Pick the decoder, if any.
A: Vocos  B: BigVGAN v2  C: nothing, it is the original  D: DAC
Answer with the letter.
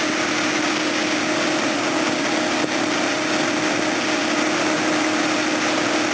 C